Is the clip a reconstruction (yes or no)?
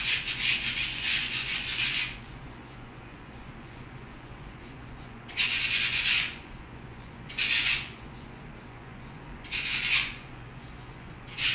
yes